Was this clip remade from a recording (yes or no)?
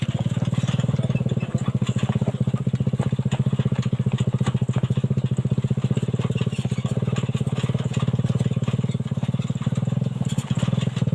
no